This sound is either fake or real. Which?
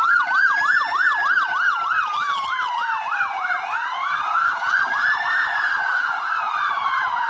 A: real